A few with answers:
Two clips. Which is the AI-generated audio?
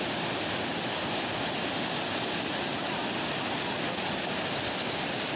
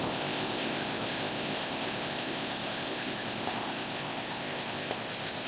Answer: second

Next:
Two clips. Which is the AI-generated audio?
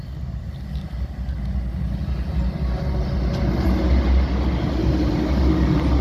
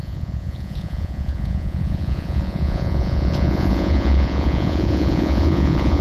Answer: second